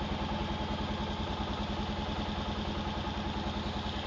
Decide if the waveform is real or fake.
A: real